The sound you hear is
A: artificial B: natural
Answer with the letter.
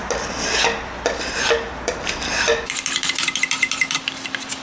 A